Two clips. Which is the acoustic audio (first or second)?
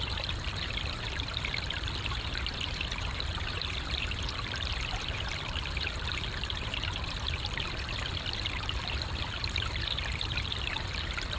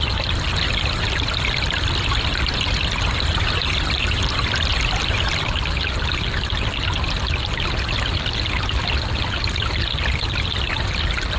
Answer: second